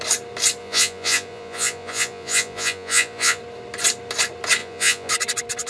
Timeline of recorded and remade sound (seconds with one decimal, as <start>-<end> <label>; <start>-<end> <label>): 0.0-0.6 recorded; 0.6-3.4 remade; 3.4-4.6 recorded; 4.6-5.1 remade; 5.1-5.7 recorded